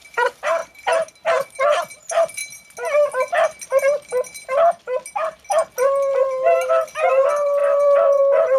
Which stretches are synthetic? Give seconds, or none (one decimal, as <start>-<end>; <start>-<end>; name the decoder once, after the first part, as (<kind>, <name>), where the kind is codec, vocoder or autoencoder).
0.0-2.4 (vocoder, BigVGAN v2); 7.0-8.6